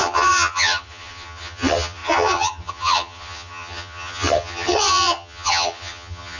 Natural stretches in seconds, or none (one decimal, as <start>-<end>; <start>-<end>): none